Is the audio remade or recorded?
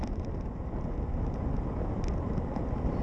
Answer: recorded